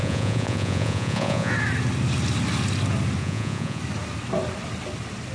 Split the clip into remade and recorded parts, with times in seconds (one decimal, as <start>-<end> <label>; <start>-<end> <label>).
0.0-1.5 remade; 1.5-3.2 recorded; 3.2-3.8 remade; 3.8-5.3 recorded